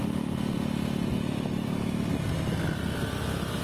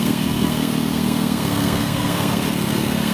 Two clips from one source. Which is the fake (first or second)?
second